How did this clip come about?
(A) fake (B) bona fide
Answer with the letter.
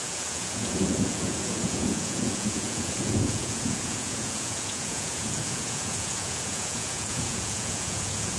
A